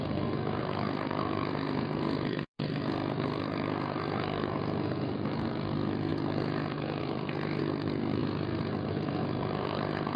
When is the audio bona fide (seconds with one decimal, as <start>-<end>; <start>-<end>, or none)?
none